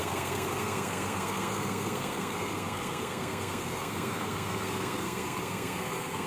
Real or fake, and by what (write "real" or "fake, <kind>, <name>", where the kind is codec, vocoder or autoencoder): fake, codec, SNAC